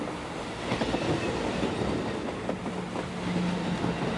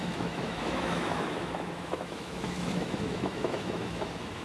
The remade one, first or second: second